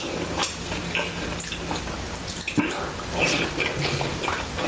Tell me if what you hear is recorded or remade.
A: recorded